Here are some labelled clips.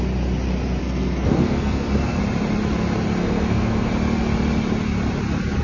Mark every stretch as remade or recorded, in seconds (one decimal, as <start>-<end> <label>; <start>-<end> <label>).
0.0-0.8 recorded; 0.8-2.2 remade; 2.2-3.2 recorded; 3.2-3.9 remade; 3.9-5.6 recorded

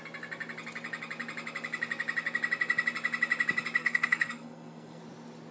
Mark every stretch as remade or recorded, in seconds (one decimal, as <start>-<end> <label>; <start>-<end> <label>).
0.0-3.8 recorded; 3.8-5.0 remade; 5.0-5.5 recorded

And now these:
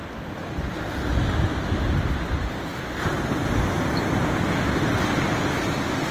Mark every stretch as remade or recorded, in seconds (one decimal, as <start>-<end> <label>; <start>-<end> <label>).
0.0-6.1 recorded

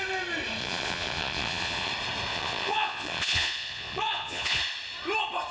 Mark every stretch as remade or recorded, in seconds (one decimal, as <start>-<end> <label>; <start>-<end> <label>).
0.0-0.6 recorded; 0.6-1.9 remade; 1.9-2.3 recorded; 2.3-4.6 remade; 4.6-5.5 recorded

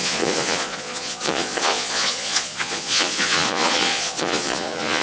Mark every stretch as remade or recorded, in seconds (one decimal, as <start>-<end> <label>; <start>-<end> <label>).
0.0-5.0 remade